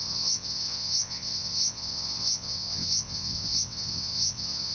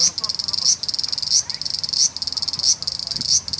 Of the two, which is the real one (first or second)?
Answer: second